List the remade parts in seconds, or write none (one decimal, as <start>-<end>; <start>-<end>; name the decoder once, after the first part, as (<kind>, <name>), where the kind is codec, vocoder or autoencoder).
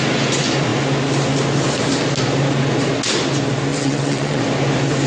3.7-4.4 (vocoder, WaveNeXt)